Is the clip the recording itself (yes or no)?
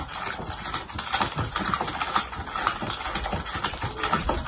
yes